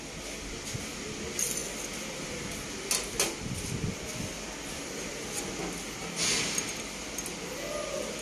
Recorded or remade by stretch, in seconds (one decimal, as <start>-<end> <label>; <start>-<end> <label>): 0.0-8.2 recorded